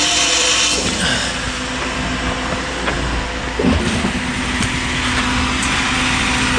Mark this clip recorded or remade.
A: recorded